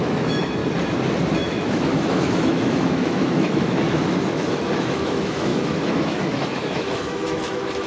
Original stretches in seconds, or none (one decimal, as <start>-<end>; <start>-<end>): 0.6-1.4